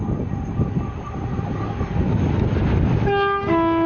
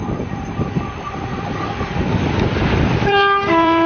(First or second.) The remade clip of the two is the second